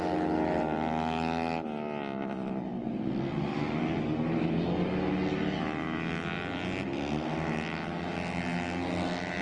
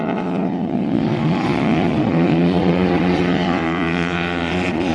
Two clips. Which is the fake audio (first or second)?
second